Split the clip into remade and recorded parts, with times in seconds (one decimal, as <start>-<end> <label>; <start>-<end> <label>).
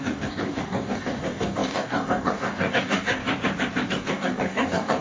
0.0-3.2 remade; 3.2-3.9 recorded; 3.9-5.0 remade